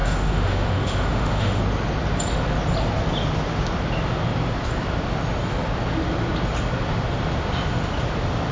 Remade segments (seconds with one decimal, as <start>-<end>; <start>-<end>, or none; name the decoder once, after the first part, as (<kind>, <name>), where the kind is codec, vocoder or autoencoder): 0.0-1.6 (autoencoder, DAC-VAE)